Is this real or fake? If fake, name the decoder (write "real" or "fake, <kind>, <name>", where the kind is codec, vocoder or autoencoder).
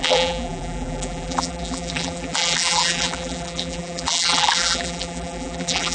fake, vocoder, BigVGAN v2